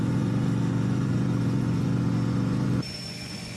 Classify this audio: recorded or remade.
remade